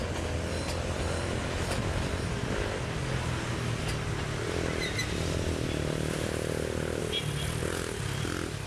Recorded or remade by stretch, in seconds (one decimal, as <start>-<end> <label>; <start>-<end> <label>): 0.0-8.7 recorded